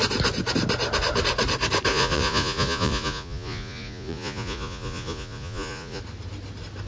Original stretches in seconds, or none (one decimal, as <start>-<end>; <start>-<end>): 0.0-1.9; 6.0-6.9